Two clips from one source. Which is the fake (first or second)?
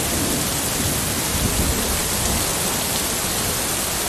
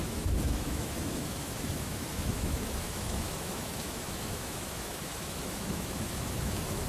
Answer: second